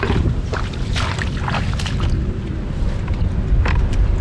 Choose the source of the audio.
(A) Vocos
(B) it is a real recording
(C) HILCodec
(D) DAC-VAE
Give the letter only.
B